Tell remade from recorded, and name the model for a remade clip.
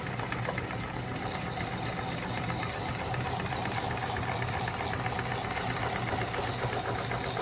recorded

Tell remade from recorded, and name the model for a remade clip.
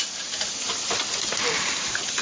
recorded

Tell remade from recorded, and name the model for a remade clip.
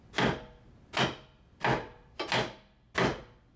recorded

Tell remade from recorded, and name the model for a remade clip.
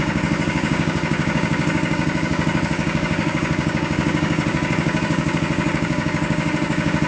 remade, codec, DAC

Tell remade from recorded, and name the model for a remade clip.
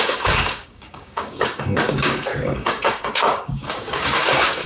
remade, codec, DAC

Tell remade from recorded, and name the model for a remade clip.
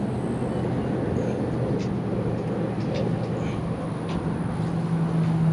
recorded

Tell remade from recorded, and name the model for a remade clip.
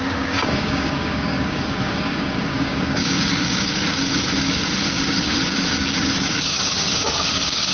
remade, codec, DAC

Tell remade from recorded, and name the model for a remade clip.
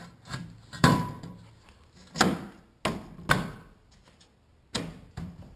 recorded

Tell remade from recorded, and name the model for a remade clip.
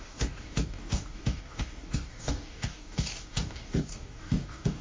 remade, codec, DAC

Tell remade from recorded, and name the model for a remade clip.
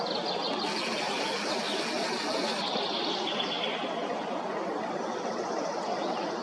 recorded